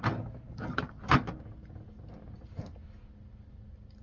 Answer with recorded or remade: recorded